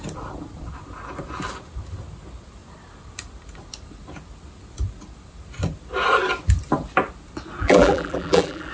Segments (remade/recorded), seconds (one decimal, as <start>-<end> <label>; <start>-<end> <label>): 0.0-7.6 recorded; 7.6-8.7 remade